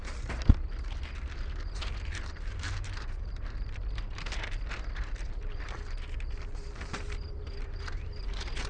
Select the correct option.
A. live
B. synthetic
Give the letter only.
B